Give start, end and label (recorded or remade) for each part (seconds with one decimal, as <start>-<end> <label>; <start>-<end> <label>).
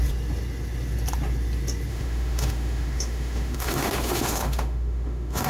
0.0-1.9 recorded; 1.9-5.5 remade